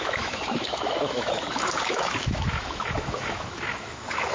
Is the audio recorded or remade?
remade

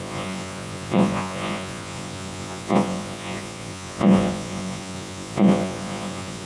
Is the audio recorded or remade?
remade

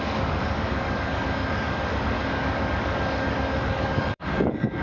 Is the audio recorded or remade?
remade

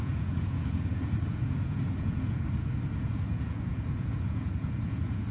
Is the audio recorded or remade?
remade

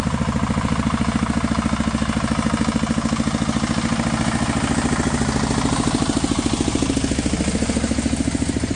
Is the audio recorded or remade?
recorded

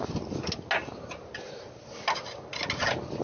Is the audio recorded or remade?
recorded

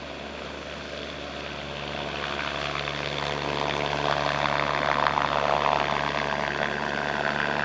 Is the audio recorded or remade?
recorded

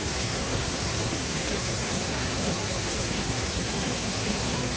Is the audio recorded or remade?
remade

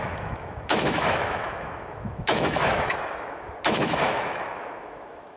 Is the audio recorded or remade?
remade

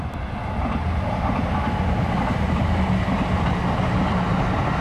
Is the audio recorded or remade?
recorded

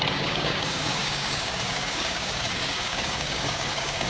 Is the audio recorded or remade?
remade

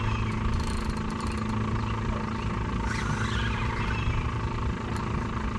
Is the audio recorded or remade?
recorded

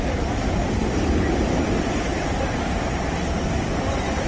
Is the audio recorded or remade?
remade